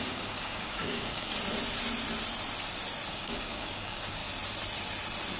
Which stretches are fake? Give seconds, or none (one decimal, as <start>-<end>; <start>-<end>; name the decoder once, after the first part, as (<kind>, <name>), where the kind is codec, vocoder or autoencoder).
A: 0.0-1.3 (codec, DAC); 3.1-4.2